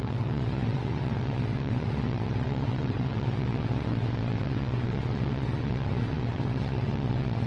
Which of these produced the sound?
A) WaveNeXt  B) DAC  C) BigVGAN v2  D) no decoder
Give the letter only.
A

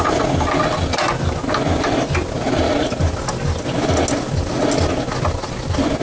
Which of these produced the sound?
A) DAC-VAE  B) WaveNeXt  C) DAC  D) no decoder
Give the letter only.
D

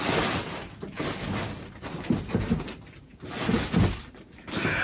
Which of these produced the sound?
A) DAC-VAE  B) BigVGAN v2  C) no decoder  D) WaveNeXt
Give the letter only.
C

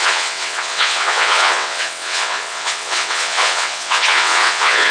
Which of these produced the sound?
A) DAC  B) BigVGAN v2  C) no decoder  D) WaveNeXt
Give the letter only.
D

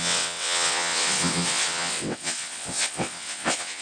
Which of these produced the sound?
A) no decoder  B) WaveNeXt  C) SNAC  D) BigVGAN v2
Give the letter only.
B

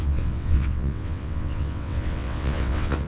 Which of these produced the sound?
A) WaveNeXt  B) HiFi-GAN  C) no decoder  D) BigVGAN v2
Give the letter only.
A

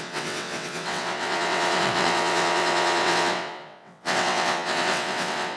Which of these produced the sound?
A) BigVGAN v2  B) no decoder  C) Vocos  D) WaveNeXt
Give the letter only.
D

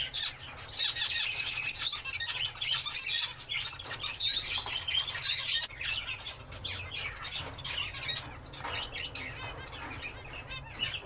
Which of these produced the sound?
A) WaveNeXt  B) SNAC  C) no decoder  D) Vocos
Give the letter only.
C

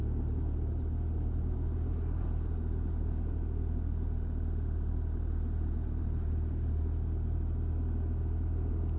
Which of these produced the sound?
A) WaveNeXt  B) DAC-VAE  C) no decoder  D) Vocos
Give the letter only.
C